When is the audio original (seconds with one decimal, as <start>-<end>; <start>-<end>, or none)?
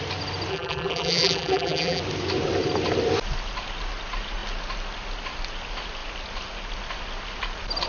0.0-0.5; 2.0-7.9